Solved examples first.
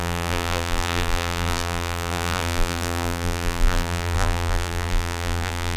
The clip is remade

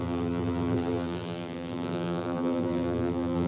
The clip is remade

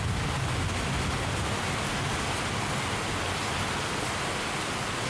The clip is recorded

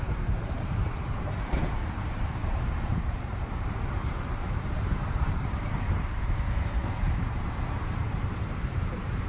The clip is remade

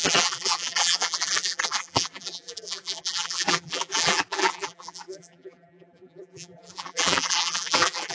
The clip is remade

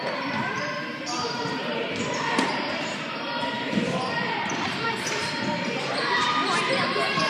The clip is remade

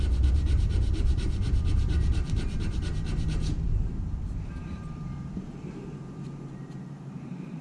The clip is remade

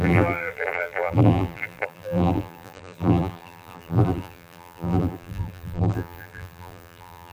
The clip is remade